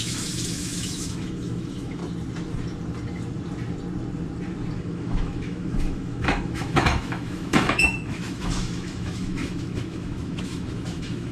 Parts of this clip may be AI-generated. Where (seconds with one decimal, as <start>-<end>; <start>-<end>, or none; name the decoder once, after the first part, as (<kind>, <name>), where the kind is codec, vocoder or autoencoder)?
0.0-2.0 (autoencoder, DAC-VAE); 4.8-11.3